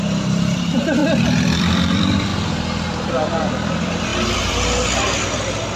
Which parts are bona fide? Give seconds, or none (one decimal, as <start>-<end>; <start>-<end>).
1.0-1.6; 2.3-3.1